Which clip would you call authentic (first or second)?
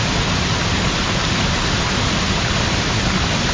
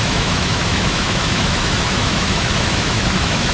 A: first